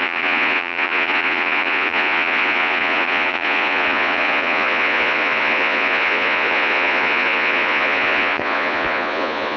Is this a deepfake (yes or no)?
yes